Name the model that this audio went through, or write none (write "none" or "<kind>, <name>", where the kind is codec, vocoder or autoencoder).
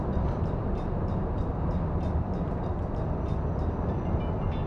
none